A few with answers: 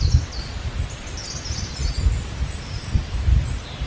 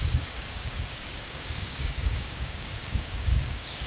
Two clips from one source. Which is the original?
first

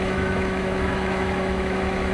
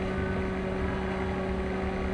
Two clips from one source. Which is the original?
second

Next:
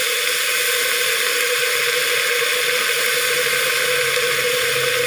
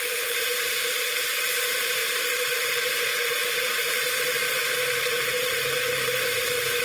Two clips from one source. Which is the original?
first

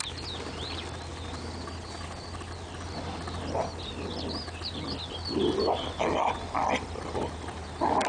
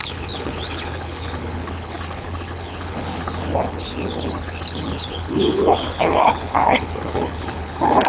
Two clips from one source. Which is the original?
first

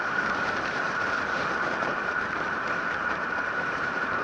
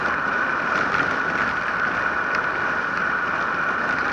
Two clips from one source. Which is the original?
second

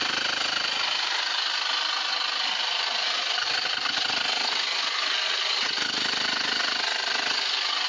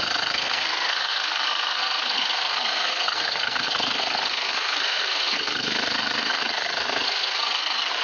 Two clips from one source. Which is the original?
first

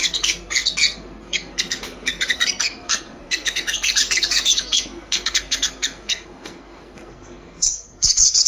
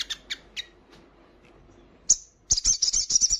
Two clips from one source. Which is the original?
second